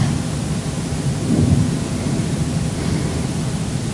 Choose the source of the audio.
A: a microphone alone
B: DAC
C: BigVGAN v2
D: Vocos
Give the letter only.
C